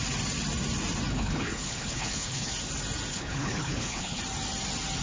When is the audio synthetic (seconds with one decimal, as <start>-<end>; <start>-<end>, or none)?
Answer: 1.1-2.5; 3.1-4.2